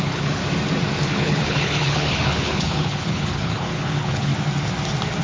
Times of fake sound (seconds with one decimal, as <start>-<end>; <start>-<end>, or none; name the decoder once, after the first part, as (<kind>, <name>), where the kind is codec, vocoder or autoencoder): 0.0-0.4 (codec, HILCodec); 1.1-4.3